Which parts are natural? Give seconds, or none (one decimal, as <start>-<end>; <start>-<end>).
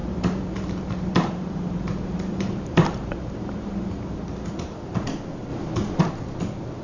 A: 3.9-6.8